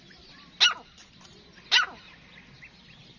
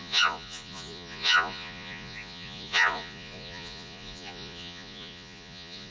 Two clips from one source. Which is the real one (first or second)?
first